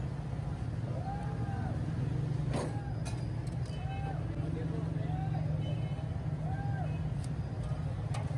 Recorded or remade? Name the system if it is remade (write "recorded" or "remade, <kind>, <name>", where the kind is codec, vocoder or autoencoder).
recorded